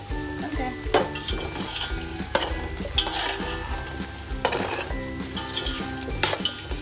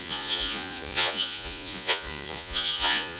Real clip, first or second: first